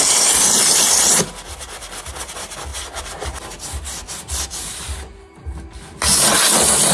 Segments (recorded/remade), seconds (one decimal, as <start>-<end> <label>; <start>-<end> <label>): 0.0-6.9 recorded